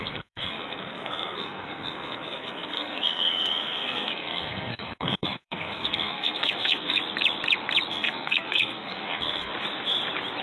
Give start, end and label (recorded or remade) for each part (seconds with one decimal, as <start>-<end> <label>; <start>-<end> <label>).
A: 0.0-7.0 remade; 7.0-7.9 recorded; 7.9-9.5 remade; 9.5-10.4 recorded